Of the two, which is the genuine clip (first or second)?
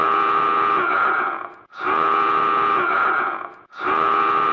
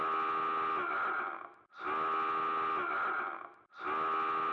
second